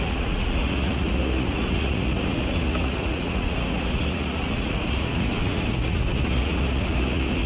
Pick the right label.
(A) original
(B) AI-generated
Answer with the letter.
B